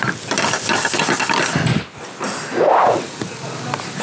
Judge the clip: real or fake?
real